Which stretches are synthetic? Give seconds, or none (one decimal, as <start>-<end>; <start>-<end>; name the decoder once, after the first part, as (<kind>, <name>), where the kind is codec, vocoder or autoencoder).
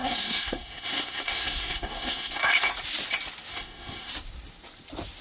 0.0-2.7 (codec, SNAC); 3.5-4.1